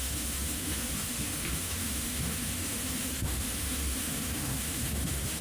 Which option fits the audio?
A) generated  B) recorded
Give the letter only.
A